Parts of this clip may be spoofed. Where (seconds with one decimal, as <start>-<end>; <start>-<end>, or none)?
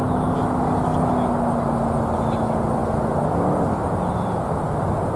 none